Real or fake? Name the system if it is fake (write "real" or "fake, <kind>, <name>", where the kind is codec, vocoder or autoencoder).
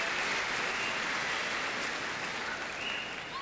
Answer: real